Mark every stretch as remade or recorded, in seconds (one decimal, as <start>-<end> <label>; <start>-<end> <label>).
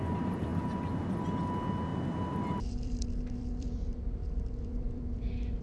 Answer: 0.0-1.9 recorded; 1.9-5.6 remade